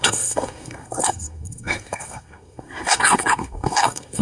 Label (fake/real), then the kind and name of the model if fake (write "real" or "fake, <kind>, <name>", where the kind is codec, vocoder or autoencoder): fake, codec, SNAC